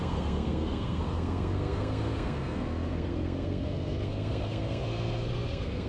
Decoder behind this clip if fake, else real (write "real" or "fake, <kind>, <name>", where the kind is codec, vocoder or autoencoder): fake, codec, SNAC